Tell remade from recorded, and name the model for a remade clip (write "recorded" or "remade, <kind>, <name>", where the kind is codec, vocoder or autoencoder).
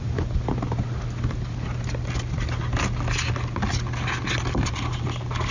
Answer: recorded